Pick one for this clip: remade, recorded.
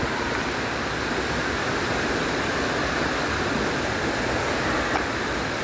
recorded